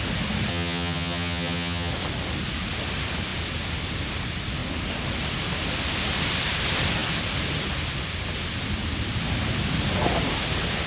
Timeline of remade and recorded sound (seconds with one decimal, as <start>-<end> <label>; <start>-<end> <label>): 0.0-0.5 recorded; 0.5-1.9 remade; 1.9-10.9 recorded